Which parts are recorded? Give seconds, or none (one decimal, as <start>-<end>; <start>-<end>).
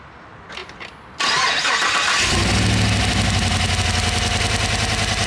0.0-5.3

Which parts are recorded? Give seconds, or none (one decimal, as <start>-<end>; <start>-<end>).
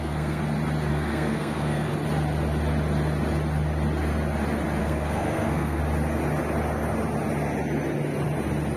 0.4-0.9; 1.9-4.8; 5.8-8.8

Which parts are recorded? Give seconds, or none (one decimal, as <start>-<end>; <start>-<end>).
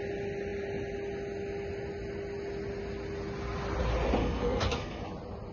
0.0-4.2; 5.0-5.5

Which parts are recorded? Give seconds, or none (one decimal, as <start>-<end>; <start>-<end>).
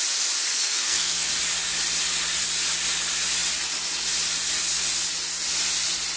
0.0-0.5; 1.3-6.2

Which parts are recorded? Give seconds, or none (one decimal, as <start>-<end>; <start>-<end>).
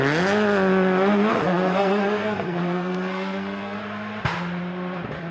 0.0-1.3; 3.8-5.3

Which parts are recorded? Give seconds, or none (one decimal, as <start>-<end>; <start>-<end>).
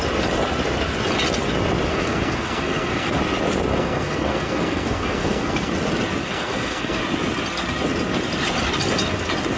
0.0-1.9; 3.2-3.7; 5.7-6.2; 7.0-9.6